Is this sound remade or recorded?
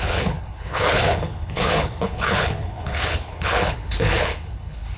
remade